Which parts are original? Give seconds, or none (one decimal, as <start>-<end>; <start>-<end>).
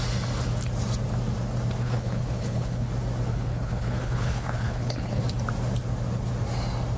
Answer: 0.0-1.8; 2.9-3.3; 5.2-7.0